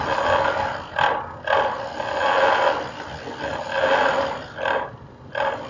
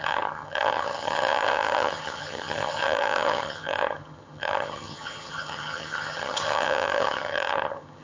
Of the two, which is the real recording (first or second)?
first